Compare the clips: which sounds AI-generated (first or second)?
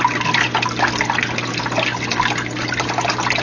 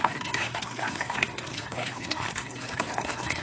second